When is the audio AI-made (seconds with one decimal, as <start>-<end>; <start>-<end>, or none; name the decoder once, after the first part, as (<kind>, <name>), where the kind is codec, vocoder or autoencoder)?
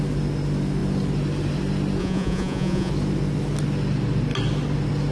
2.0-2.9 (vocoder, Vocos)